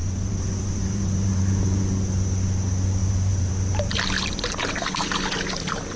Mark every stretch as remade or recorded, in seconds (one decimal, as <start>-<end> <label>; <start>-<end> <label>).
0.0-1.8 remade; 1.8-3.0 recorded; 3.0-3.5 remade; 3.5-6.0 recorded